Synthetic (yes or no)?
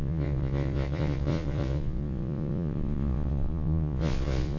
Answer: yes